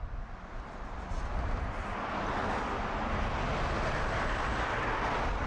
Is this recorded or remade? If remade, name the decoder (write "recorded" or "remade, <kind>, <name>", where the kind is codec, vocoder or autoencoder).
recorded